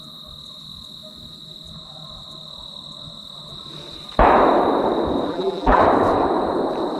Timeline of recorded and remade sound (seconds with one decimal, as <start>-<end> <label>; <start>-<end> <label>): 0.0-5.3 recorded; 5.3-5.8 remade; 5.8-7.0 recorded